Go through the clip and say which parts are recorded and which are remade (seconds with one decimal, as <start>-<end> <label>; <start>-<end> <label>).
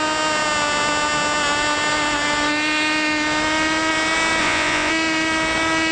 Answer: 0.0-4.4 recorded; 4.4-4.9 remade; 4.9-5.9 recorded